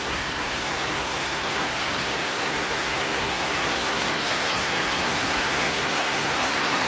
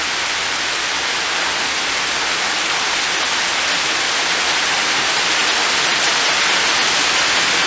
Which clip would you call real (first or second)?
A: second